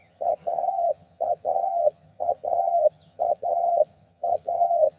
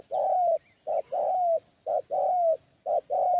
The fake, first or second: first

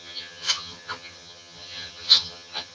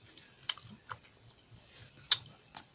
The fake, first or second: first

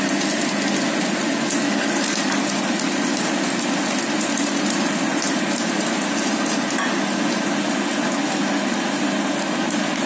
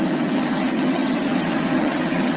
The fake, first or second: second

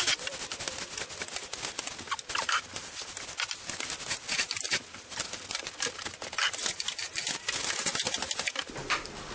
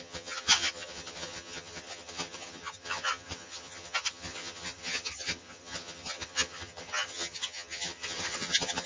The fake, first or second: second